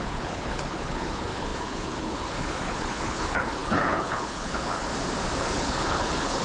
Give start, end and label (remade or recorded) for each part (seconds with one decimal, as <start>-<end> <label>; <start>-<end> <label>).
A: 0.0-4.9 remade; 4.9-5.4 recorded; 5.4-6.4 remade